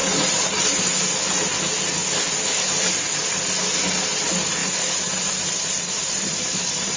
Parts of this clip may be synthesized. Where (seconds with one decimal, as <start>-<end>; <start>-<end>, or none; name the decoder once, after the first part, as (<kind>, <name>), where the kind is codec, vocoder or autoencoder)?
0.0-1.1 (vocoder, BigVGAN v2); 4.6-7.0